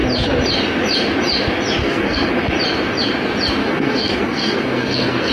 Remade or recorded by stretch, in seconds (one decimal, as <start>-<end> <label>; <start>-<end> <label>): 0.0-1.8 recorded; 1.8-2.3 remade; 2.3-3.6 recorded; 3.6-5.3 remade